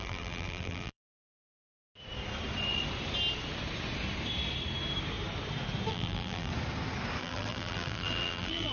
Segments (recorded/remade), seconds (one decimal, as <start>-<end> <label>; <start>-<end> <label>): 0.0-1.8 remade; 1.8-5.9 recorded; 5.9-6.5 remade; 6.5-7.2 recorded; 7.2-8.7 remade